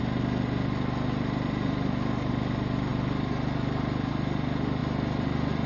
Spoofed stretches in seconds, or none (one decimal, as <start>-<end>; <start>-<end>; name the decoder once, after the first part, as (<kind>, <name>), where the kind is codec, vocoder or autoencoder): 2.9-4.1 (vocoder, BigVGAN v2); 4.8-5.7